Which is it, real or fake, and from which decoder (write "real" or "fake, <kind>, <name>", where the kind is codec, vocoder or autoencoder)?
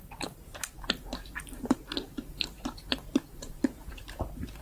fake, vocoder, BigVGAN v2